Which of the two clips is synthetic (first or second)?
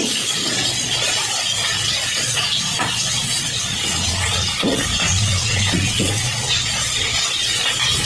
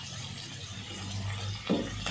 first